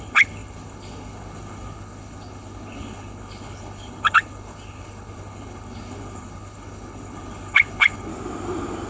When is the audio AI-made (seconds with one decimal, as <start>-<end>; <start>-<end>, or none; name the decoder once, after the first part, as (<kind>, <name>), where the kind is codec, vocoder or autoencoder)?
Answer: 0.0-8.1 (codec, HILCodec)